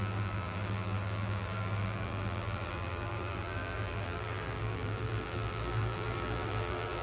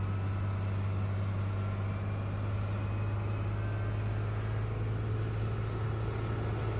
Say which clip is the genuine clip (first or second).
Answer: second